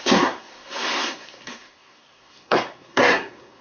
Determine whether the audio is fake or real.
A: fake